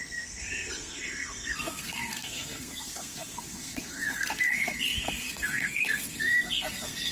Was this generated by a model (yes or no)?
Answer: yes